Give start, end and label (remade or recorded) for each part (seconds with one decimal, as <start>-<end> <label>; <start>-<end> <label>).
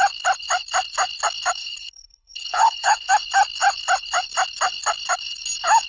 0.0-1.6 recorded; 1.6-3.1 remade; 3.1-5.9 recorded